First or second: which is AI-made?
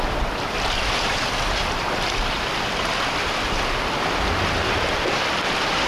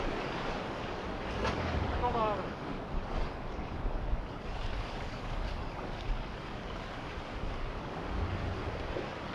second